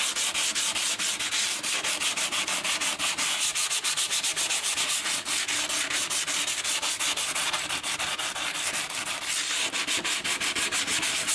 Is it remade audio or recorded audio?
recorded